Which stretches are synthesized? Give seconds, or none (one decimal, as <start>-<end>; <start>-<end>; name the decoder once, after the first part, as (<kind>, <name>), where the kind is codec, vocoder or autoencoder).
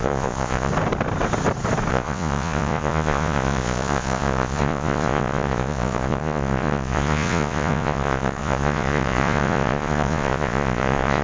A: 0.0-0.7 (vocoder, Vocos); 1.9-11.2